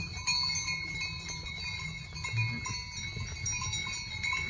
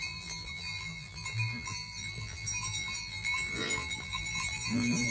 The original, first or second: first